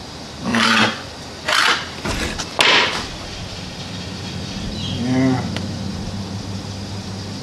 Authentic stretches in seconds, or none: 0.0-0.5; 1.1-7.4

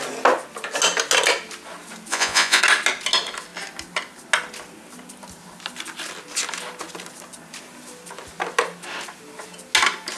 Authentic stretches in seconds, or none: 0.0-2.1; 2.6-10.2

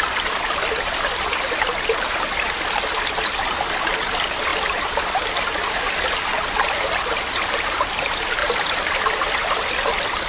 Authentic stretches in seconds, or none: 0.0-10.3

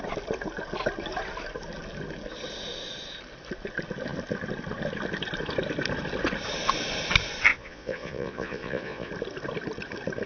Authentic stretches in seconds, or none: 0.0-7.5; 9.1-10.3

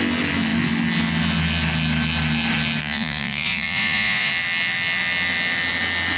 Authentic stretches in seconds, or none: 0.0-2.8; 4.3-6.2

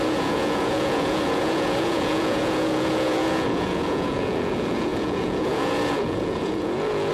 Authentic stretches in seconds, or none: none

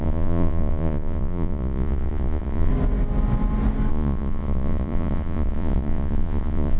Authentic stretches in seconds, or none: 2.7-3.9